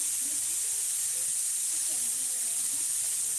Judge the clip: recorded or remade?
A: remade